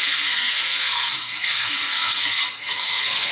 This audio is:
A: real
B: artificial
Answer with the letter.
B